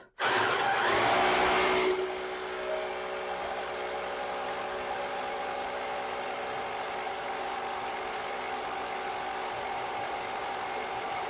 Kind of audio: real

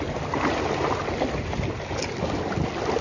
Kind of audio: real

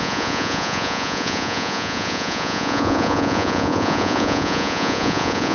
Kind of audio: fake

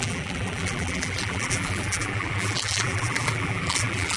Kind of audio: fake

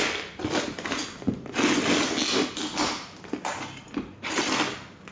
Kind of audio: real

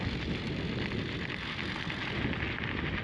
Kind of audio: real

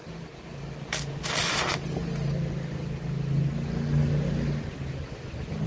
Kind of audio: real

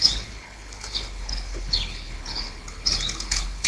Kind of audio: fake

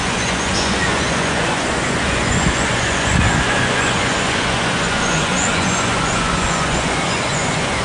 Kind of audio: fake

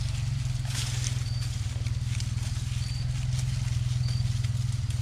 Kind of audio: real